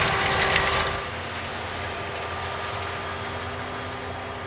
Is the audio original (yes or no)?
yes